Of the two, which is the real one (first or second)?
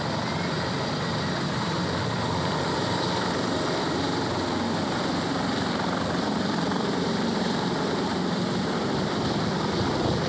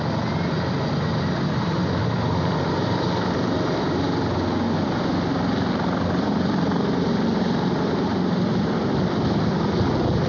second